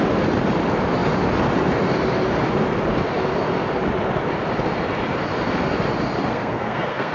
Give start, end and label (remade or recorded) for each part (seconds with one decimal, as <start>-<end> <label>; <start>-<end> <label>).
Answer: 0.0-6.3 recorded; 6.3-7.1 remade